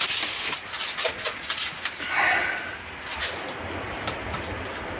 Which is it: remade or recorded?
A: recorded